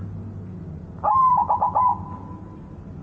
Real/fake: real